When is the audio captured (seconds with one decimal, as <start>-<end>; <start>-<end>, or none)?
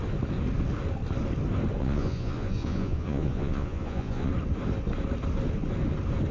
0.0-1.8; 4.3-6.3